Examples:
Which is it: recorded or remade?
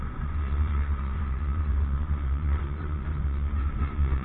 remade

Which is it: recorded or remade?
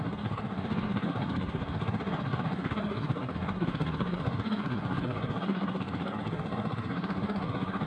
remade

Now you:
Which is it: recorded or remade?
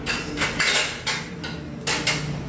recorded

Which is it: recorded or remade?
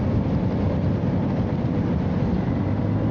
recorded